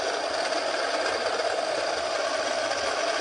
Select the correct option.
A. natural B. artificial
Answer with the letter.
A